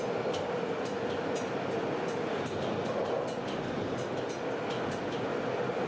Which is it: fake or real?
real